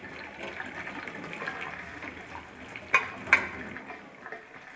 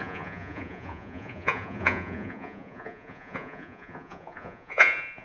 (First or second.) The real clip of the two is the first